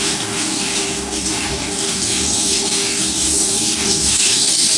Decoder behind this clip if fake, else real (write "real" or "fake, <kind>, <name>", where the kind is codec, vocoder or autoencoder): fake, codec, DAC